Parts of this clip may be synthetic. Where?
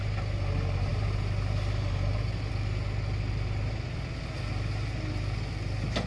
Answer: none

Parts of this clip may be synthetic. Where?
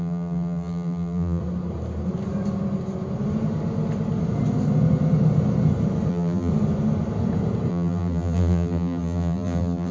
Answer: 0.0-1.4 (vocoder, BigVGAN v2); 6.1-6.5; 7.7-9.9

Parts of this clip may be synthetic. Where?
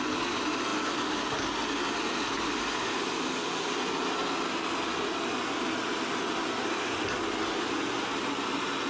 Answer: none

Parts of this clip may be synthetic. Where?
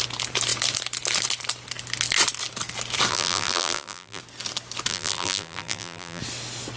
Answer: 3.1-4.2 (vocoder, BigVGAN v2); 4.9-6.2